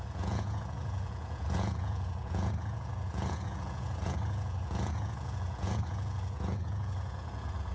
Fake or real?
fake